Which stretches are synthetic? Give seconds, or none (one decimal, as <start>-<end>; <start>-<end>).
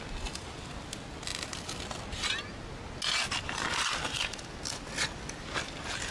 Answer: none